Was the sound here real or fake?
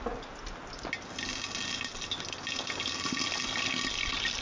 real